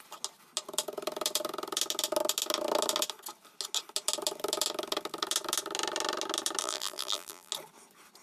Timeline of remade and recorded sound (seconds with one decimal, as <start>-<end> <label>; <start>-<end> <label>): 0.0-6.6 recorded; 6.6-7.5 remade; 7.5-8.2 recorded